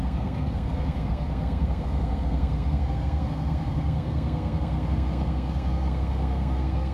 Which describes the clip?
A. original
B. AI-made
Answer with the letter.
B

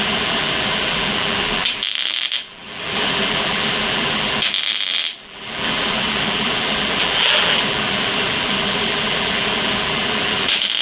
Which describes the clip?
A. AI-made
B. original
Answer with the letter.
A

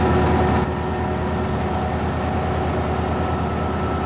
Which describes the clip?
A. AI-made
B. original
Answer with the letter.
B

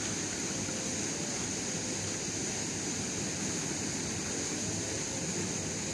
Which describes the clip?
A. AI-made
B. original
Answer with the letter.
B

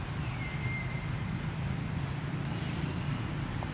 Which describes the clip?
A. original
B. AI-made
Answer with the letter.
A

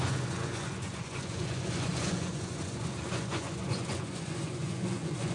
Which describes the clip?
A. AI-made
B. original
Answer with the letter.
A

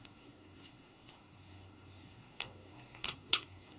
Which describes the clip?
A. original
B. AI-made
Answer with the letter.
B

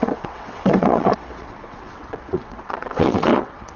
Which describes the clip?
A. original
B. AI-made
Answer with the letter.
B